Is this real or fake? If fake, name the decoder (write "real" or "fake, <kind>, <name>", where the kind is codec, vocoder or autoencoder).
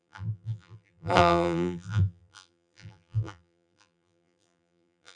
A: fake, vocoder, BigVGAN v2